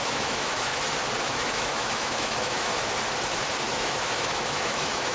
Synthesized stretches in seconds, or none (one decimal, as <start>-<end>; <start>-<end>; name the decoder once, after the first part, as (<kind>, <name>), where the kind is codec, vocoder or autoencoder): 0.0-0.7 (autoencoder, DAC-VAE); 1.2-2.7; 3.7-5.1